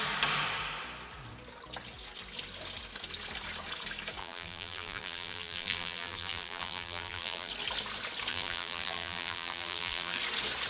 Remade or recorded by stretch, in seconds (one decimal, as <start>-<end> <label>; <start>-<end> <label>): 0.0-4.2 recorded; 4.2-7.5 remade; 7.5-8.3 recorded; 8.3-10.2 remade; 10.2-10.7 recorded

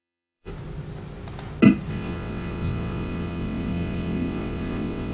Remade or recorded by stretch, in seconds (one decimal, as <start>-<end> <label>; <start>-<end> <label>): 0.0-0.5 remade; 0.5-1.9 recorded; 1.9-5.1 remade

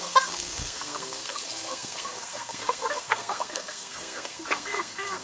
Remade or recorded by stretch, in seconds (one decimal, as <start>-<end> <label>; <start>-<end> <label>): 0.0-5.2 remade